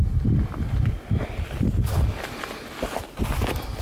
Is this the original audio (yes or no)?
yes